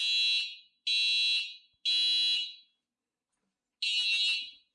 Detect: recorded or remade recorded